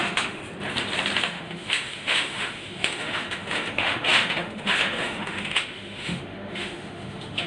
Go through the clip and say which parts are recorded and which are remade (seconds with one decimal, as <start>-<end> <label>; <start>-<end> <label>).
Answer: 0.0-0.4 remade; 0.4-1.2 recorded; 1.2-7.5 remade